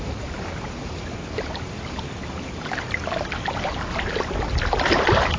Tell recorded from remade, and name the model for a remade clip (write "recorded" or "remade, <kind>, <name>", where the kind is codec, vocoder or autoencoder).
recorded